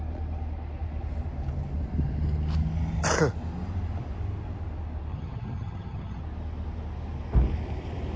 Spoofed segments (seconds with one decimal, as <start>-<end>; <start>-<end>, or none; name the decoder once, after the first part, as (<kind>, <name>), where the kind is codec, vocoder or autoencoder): 5.1-6.2 (vocoder, HiFi-GAN)